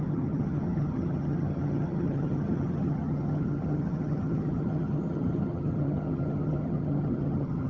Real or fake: fake